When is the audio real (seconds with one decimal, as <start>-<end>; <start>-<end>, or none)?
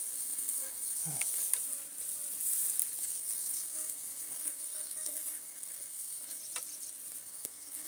1.4-3.0; 6.4-7.2